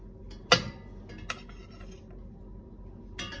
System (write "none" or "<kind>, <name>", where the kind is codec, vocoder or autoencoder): none